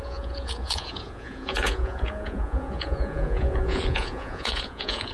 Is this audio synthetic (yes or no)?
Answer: yes